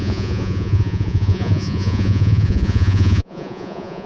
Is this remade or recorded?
remade